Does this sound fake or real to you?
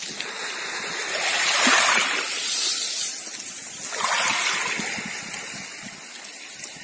real